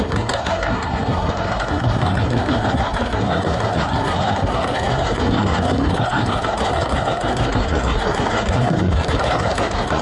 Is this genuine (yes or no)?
no